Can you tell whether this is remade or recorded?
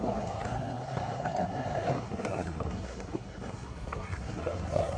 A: remade